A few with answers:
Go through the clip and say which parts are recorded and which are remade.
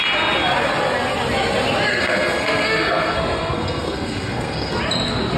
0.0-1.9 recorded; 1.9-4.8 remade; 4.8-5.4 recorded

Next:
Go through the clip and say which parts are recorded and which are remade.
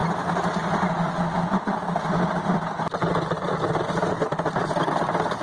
0.0-5.4 recorded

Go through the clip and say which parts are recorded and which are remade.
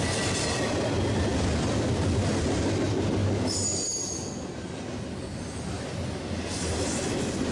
0.0-7.5 recorded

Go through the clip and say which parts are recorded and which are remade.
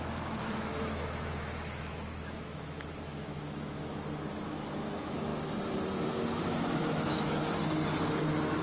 0.0-5.3 remade; 5.3-6.4 recorded; 6.4-7.4 remade; 7.4-8.2 recorded; 8.2-8.6 remade